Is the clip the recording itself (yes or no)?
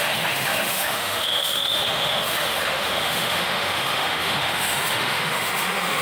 no